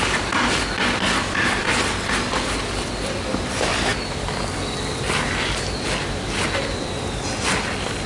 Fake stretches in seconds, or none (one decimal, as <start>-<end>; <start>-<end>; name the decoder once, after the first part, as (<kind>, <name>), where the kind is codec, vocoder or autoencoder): none